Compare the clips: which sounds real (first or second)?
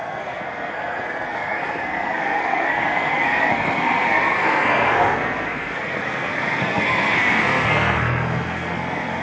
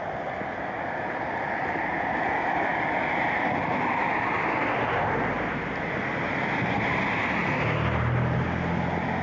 second